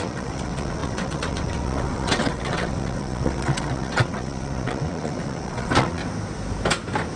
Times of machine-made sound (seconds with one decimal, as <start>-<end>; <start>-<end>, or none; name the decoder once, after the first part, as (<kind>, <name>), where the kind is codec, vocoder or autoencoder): 0.0-6.0 (vocoder, WaveNeXt)